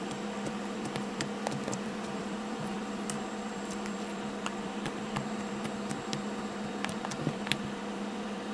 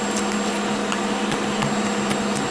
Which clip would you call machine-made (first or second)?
first